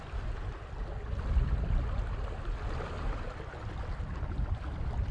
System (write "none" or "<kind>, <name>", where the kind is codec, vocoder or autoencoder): none